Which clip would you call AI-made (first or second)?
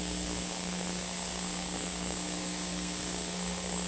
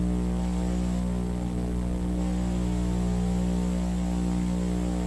first